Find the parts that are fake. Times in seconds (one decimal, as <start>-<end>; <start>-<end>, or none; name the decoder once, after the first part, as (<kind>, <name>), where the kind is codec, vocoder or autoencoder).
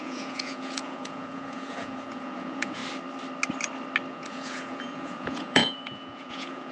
0.0-2.8 (vocoder, Vocos); 4.1-6.7